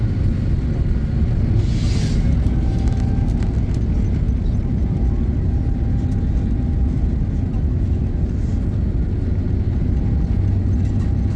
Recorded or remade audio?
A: recorded